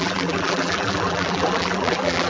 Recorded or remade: remade